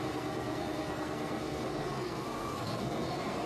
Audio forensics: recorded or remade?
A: remade